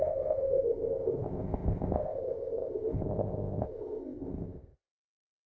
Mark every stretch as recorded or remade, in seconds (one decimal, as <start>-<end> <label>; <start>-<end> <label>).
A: 0.0-5.5 remade